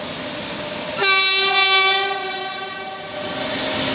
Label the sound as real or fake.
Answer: real